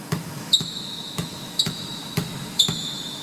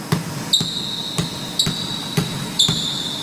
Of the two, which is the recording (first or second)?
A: second